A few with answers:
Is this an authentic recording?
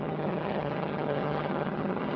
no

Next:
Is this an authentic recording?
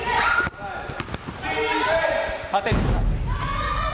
yes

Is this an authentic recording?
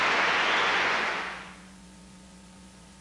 no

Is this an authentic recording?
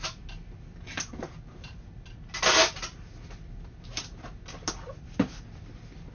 yes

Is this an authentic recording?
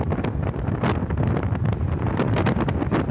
yes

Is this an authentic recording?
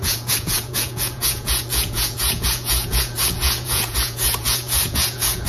no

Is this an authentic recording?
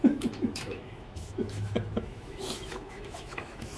no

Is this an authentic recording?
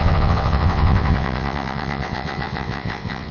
no